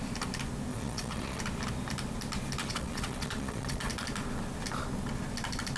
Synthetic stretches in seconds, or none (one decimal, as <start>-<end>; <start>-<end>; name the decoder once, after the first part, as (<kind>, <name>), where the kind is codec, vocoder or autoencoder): 0.7-1.4 (vocoder, Vocos); 2.6-3.9